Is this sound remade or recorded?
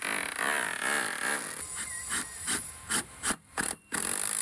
recorded